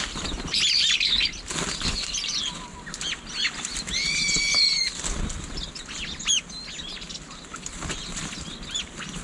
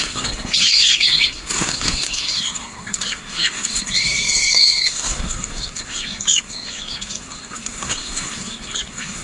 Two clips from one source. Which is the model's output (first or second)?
second